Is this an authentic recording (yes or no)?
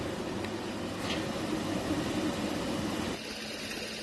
yes